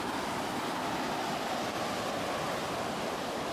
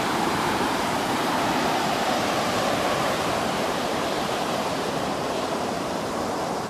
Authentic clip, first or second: first